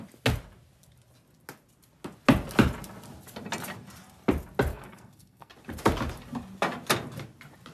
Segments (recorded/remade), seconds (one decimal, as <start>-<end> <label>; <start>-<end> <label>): 0.0-4.7 recorded; 4.7-5.5 remade; 5.5-7.7 recorded